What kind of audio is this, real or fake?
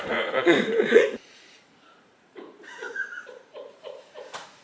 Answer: fake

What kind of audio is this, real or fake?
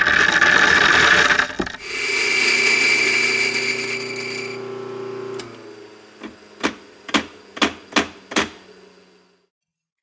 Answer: real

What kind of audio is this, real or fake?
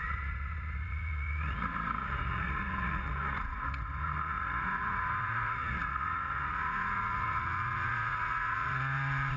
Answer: fake